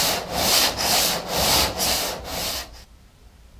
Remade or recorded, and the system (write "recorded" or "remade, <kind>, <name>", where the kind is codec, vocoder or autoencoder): remade, vocoder, BigVGAN v2